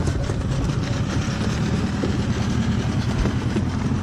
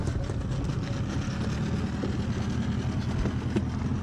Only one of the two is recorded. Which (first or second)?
second